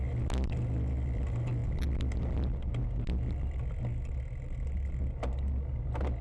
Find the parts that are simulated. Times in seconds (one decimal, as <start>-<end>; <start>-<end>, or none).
none